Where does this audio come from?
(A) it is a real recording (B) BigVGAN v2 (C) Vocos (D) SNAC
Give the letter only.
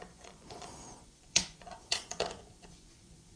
C